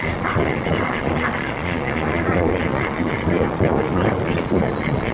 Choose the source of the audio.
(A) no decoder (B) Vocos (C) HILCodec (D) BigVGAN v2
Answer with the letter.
B